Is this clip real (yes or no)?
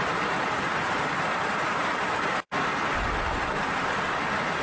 yes